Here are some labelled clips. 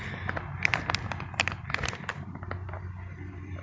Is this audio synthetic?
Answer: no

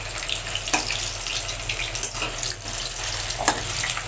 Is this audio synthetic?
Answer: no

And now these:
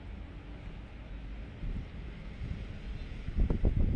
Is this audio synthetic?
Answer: no